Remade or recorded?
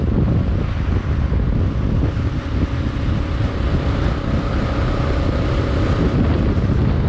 recorded